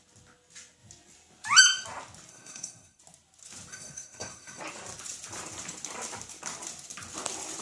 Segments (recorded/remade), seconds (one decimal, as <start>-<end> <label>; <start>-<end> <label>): 0.0-2.3 recorded; 2.3-3.0 remade; 3.0-3.7 recorded; 3.7-4.6 remade; 4.6-7.6 recorded